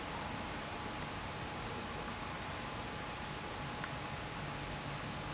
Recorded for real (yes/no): yes